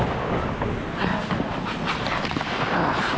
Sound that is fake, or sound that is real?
real